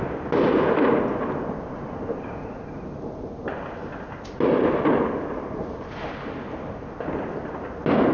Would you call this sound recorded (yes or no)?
yes